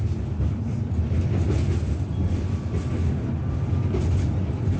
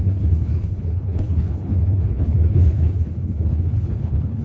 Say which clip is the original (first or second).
first